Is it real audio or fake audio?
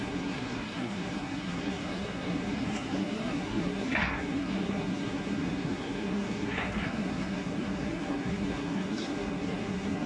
fake